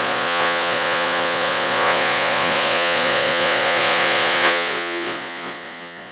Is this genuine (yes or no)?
no